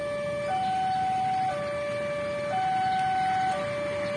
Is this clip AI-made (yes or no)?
no